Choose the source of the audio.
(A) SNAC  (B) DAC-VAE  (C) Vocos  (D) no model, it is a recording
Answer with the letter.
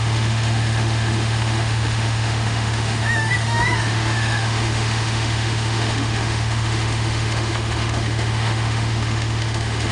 B